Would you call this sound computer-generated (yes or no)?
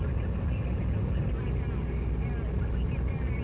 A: no